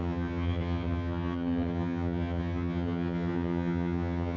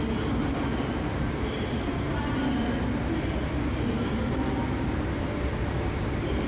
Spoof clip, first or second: first